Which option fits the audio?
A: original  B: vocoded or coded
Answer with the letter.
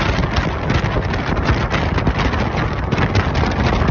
A